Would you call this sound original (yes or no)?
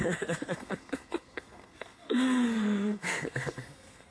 no